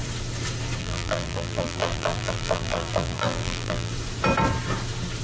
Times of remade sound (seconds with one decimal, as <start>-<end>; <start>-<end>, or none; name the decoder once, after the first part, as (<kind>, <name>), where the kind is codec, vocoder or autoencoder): 0.8-3.9 (vocoder, BigVGAN v2)